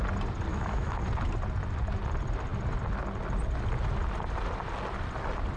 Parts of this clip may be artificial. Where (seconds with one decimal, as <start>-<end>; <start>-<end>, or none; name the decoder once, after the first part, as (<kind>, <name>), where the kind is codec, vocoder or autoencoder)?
0.5-1.0 (autoencoder, DAC-VAE)